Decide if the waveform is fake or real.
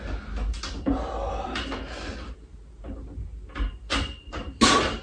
real